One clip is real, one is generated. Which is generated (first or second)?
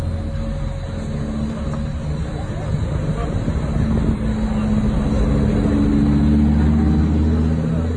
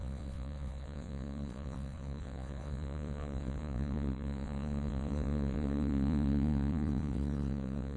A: second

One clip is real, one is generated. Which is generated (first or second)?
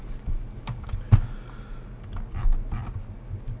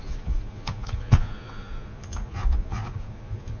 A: second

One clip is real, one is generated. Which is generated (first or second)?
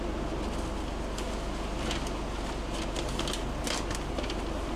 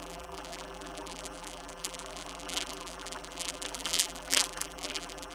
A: second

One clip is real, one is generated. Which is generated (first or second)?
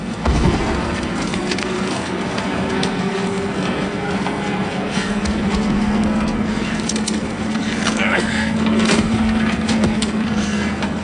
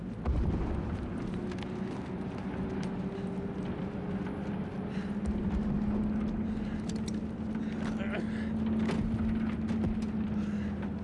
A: first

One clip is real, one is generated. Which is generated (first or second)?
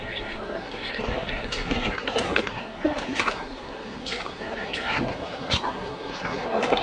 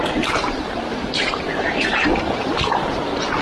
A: first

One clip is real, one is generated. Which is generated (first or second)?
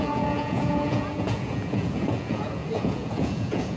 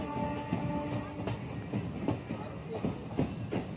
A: first